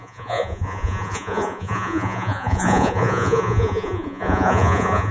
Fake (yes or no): yes